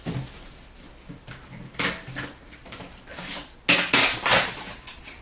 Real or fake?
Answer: real